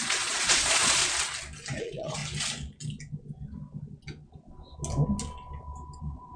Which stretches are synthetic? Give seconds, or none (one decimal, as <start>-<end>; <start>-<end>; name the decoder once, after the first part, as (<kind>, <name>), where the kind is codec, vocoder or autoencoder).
0.0-1.0 (vocoder, Vocos); 1.8-2.2; 6.0-6.4